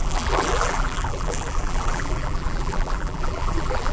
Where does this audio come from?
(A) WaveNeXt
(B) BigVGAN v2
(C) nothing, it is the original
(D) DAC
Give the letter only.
B